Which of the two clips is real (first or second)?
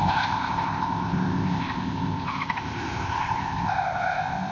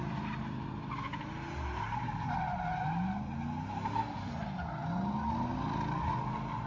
second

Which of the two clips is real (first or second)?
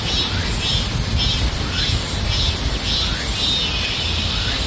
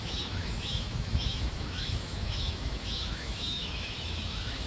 first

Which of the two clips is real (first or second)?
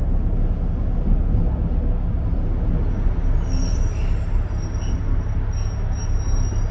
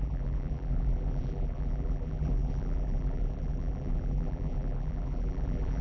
first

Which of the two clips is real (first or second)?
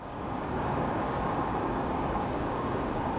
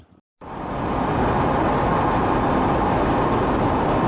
second